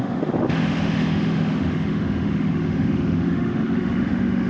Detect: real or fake fake